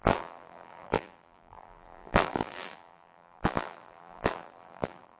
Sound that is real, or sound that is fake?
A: fake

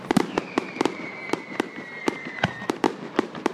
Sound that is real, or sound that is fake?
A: fake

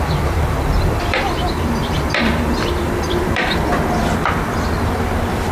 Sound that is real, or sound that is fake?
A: fake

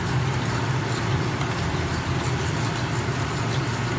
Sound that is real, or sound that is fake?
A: fake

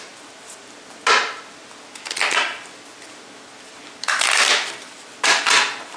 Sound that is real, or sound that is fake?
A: real